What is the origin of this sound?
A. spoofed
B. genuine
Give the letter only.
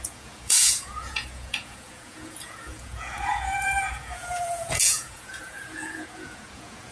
A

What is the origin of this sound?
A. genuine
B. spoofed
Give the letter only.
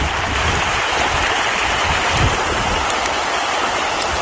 A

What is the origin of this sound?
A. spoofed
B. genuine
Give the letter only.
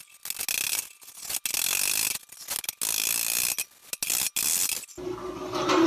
B